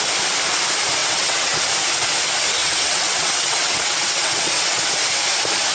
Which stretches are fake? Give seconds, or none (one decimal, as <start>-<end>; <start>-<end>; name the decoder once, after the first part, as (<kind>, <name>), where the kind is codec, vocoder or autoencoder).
1.0-1.7 (vocoder, WaveNeXt); 2.6-4.9